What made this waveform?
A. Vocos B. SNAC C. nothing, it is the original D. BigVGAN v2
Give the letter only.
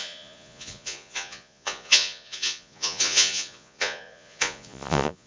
A